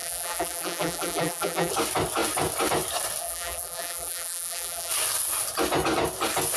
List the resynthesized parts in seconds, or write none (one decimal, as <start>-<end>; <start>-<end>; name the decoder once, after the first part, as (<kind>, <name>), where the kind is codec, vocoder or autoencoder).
0.0-1.7 (vocoder, BigVGAN v2); 3.2-4.9